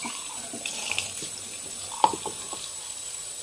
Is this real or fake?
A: real